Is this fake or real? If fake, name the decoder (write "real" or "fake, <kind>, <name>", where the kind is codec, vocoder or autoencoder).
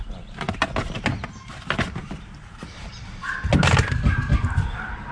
real